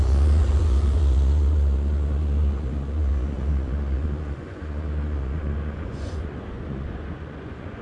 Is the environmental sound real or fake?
fake